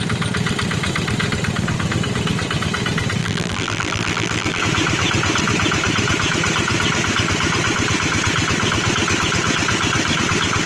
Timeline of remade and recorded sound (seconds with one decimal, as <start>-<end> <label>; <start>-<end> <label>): 0.0-3.2 recorded; 3.2-4.6 remade; 4.6-10.7 recorded